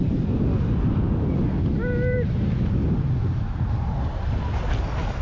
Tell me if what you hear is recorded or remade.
recorded